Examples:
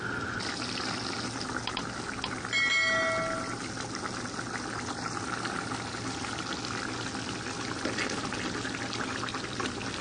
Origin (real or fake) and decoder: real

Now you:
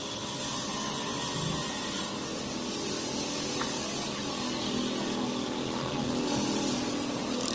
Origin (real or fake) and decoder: real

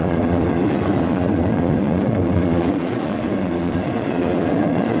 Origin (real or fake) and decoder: fake, vocoder, Vocos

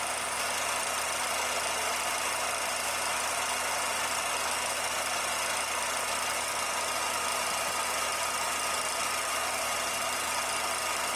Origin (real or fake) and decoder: real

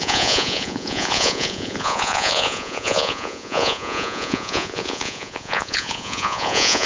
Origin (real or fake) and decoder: fake, vocoder, Vocos